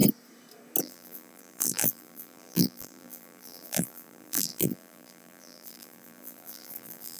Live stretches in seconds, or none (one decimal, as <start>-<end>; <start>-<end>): 0.0-0.8